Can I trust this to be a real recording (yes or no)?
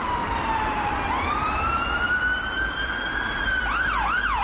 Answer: no